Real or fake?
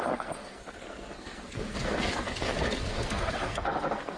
fake